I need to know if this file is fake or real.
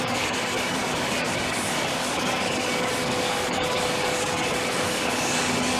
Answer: fake